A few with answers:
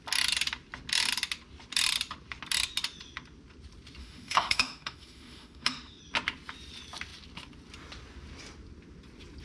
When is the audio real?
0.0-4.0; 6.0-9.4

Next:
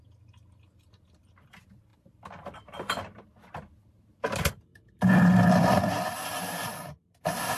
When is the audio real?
0.0-1.9; 3.1-4.7